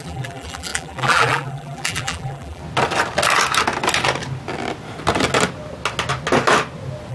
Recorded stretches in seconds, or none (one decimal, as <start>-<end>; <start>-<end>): 2.6-7.1

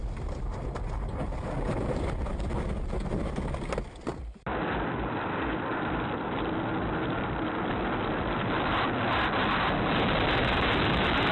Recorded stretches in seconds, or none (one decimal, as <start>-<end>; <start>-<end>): 2.3-4.5; 6.4-11.3

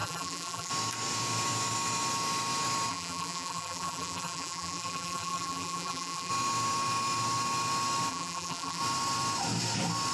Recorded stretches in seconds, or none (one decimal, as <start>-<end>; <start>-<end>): 0.7-2.9; 6.3-8.1; 8.8-10.1

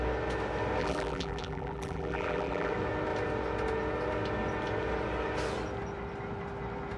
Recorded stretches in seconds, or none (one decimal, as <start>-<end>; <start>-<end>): 0.0-0.8; 2.7-7.0

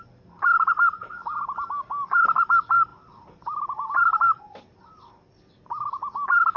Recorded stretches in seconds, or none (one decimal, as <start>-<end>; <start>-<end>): 0.0-6.6

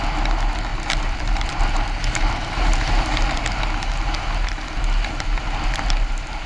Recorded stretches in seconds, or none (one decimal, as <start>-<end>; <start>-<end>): 0.0-0.7; 3.4-6.5

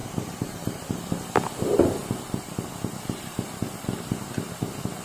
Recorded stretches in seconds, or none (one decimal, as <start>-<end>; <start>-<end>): 1.1-5.0